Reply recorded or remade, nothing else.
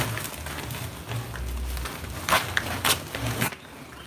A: recorded